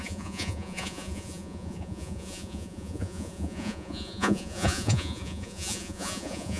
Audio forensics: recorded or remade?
remade